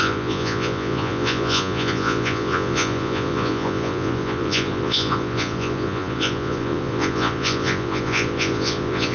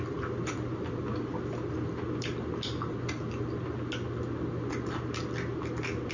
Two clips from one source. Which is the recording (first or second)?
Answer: second